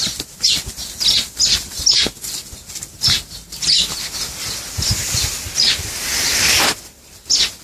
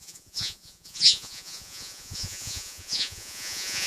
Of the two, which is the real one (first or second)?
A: first